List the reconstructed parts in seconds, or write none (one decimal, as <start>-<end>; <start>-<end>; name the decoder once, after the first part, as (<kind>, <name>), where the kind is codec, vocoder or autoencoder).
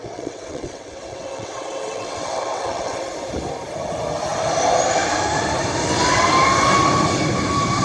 0.0-3.0 (vocoder, WaveNeXt)